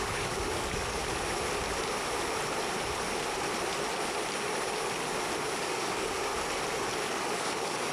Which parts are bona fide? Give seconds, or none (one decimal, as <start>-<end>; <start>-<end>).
1.0-5.6; 6.3-7.1